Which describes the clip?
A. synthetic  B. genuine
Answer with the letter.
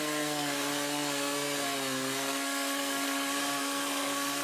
A